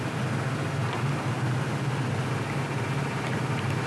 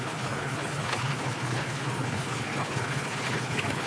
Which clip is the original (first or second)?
first